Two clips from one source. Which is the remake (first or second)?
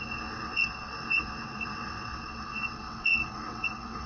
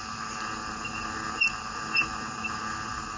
first